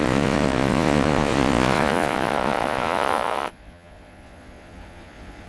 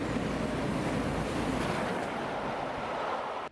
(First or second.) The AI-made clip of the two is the first